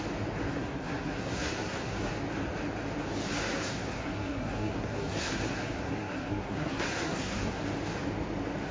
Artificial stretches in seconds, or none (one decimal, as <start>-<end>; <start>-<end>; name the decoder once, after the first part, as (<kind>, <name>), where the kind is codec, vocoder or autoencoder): 0.5-2.1 (codec, SNAC); 3.4-7.6